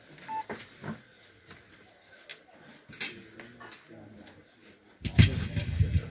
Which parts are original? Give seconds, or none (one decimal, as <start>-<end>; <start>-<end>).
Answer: 0.0-4.6